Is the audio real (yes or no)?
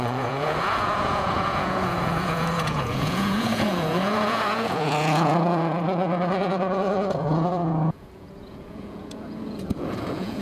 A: no